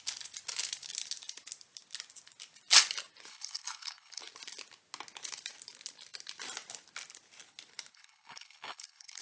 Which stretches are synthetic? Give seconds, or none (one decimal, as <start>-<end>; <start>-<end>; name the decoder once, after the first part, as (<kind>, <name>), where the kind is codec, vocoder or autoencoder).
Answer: 3.3-4.2 (codec, HILCodec); 7.9-9.2

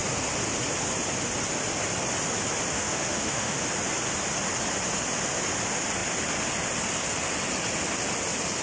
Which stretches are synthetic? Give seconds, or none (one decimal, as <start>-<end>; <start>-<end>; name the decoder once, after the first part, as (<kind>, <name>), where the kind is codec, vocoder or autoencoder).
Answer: 2.7-3.6 (autoencoder, DAC-VAE)

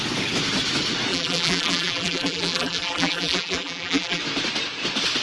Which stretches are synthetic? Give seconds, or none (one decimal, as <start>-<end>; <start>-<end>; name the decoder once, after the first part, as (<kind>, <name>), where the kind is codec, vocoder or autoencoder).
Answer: 1.1-4.2 (vocoder, BigVGAN v2)

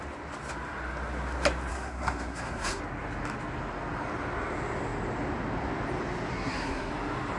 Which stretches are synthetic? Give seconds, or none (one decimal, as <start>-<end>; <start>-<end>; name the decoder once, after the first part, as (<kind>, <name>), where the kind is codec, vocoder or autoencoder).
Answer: 1.7-2.8 (codec, SNAC); 6.3-6.9

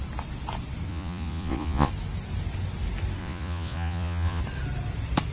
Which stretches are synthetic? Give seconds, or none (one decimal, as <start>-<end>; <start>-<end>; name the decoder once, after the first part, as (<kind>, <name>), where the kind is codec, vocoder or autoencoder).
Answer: 0.9-1.9 (vocoder, Vocos); 3.2-4.4

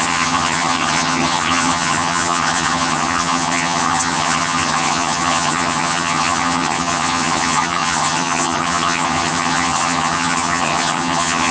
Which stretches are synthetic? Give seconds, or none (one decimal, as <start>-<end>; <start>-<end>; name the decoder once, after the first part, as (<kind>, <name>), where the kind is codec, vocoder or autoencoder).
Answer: 0.0-11.5 (vocoder, HiFi-GAN)

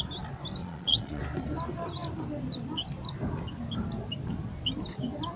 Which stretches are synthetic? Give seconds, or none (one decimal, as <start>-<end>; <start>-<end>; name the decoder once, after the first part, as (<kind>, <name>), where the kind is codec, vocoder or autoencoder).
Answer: 0.6-1.2 (vocoder, Vocos)

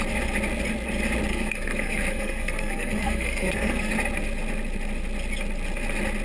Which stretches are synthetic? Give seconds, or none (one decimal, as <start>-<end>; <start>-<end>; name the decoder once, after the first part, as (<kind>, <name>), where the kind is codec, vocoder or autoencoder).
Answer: 1.3-3.9 (codec, SNAC)